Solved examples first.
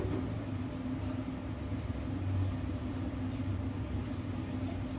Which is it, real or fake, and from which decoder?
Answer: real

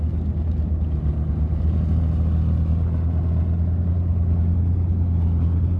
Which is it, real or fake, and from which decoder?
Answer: real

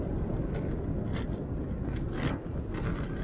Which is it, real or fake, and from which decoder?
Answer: real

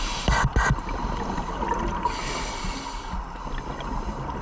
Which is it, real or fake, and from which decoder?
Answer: real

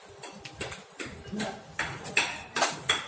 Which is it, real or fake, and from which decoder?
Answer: real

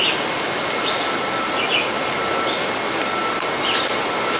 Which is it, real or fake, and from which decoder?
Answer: fake, vocoder, BigVGAN v2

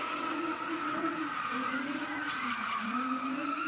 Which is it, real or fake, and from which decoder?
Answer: fake, vocoder, Vocos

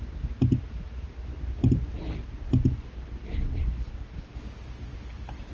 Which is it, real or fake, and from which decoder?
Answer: real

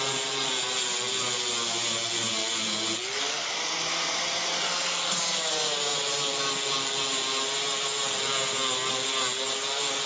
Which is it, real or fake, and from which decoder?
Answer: real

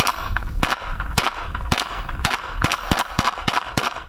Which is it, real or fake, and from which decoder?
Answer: fake, codec, SNAC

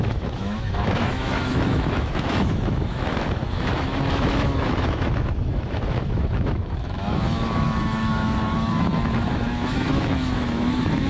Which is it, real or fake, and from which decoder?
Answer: fake, autoencoder, DAC-VAE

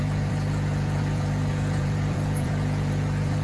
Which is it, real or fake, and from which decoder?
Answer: fake, vocoder, Vocos